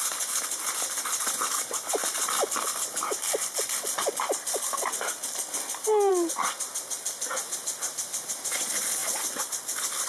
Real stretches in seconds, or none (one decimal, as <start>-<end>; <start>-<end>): 0.0-10.1